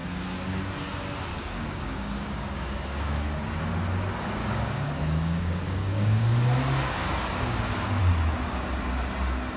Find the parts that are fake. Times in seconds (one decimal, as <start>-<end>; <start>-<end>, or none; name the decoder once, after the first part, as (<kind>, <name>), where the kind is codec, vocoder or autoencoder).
0.0-0.6 (codec, DAC); 1.3-3.6; 4.4-8.0